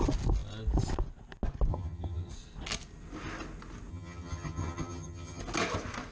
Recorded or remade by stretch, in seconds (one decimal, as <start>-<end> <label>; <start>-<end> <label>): 0.0-1.7 recorded; 1.7-2.3 remade; 2.3-3.9 recorded; 3.9-5.4 remade; 5.4-6.1 recorded

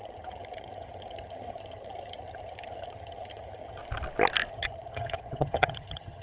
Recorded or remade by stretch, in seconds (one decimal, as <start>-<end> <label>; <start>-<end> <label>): 0.0-3.8 remade; 3.8-4.5 recorded; 4.5-6.2 remade

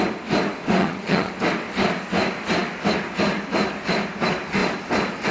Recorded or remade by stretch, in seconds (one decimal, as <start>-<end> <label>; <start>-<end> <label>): 0.0-0.8 recorded; 0.8-1.3 remade; 1.3-5.3 recorded

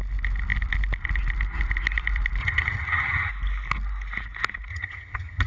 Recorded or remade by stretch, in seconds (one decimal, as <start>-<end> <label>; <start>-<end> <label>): 0.0-2.4 recorded; 2.4-3.3 remade; 3.3-4.7 recorded; 4.7-5.5 remade

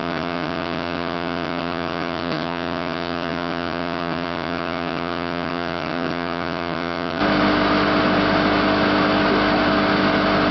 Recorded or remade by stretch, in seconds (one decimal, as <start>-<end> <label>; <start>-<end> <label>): 0.0-7.2 remade; 7.2-10.5 recorded

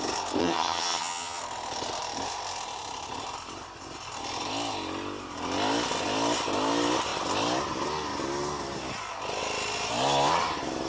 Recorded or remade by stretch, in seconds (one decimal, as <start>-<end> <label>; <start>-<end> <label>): 0.0-0.4 recorded; 0.4-1.4 remade; 1.4-10.9 recorded

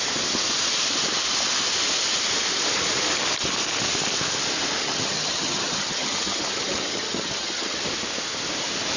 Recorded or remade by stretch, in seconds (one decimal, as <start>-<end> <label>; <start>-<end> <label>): 0.0-4.8 recorded; 4.8-7.8 remade; 7.8-9.0 recorded

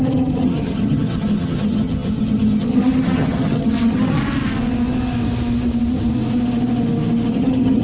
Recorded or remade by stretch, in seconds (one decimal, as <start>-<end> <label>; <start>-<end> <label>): 0.0-4.2 remade; 4.2-7.3 recorded; 7.3-7.8 remade